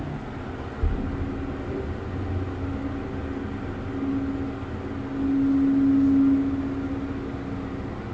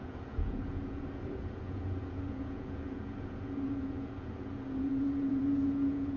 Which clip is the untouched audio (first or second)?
first